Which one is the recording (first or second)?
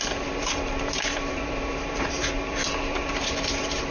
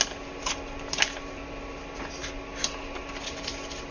second